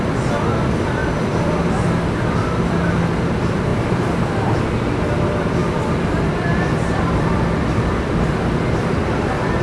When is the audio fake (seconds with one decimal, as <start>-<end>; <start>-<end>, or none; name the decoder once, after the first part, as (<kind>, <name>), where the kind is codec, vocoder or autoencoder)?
1.0-1.5 (vocoder, BigVGAN v2); 3.7-4.6; 5.6-9.6